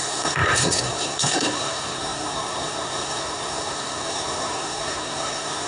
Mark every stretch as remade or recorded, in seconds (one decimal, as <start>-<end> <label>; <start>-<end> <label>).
0.0-5.7 remade